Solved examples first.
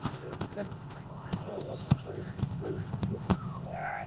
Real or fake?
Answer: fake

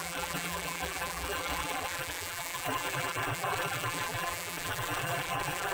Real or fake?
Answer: fake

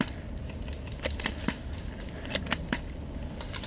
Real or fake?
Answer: fake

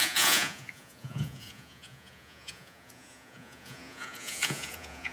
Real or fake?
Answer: fake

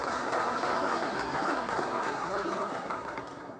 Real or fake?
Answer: fake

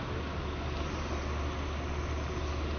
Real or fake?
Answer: real